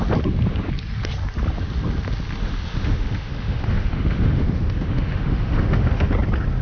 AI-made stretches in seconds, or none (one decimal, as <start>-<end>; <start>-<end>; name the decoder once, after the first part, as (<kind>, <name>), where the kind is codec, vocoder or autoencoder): 2.4-6.1 (autoencoder, DAC-VAE)

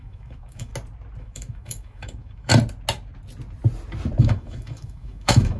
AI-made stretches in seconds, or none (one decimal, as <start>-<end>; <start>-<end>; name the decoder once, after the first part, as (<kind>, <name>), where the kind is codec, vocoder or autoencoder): 0.0-0.7 (autoencoder, DAC-VAE); 1.2-2.5; 4.2-5.6

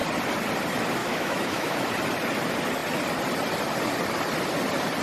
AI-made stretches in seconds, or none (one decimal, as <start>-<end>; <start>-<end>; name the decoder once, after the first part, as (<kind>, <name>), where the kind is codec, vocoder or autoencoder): 1.0-1.9 (autoencoder, DAC-VAE)

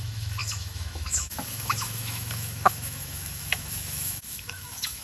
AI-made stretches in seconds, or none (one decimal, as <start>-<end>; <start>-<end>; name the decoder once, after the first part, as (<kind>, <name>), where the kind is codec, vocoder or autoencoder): 0.0-5.0 (autoencoder, DAC-VAE)

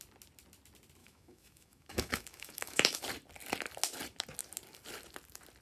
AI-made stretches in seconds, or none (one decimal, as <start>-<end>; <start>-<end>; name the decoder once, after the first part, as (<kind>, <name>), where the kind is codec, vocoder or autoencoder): 1.0-3.0 (autoencoder, DAC-VAE)

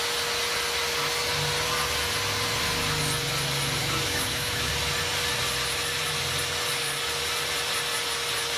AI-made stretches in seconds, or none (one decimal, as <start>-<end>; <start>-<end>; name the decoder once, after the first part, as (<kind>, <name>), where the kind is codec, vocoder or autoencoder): 3.8-4.7 (autoencoder, DAC-VAE)